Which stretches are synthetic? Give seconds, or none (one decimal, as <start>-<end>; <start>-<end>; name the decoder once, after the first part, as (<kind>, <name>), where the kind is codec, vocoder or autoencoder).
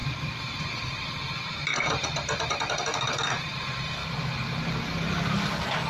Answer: 0.0-1.6 (vocoder, BigVGAN v2); 2.9-3.5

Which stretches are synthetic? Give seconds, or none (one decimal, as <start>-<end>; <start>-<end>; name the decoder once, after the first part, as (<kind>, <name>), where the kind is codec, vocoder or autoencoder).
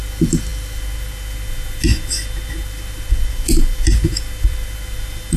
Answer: none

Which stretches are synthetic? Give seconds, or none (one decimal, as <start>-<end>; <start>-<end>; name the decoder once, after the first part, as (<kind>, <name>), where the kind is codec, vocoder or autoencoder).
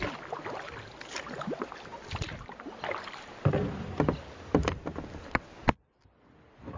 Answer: none